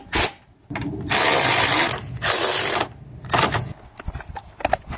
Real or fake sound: real